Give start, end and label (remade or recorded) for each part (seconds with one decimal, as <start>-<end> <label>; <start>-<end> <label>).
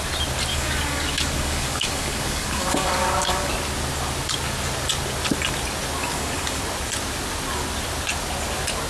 0.0-0.5 recorded; 0.5-3.5 remade; 3.5-6.0 recorded; 6.0-6.6 remade; 6.6-8.9 recorded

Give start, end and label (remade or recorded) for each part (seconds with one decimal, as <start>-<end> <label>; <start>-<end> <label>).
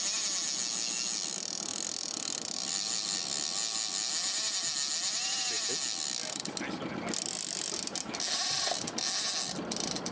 0.0-10.1 recorded